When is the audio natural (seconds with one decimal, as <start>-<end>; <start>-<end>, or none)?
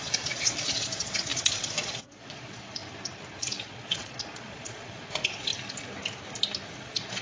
2.8-3.4; 5.5-6.8